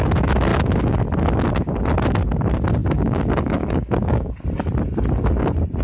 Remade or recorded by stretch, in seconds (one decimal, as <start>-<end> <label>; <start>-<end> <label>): 0.0-2.8 recorded; 2.8-4.3 remade; 4.3-5.8 recorded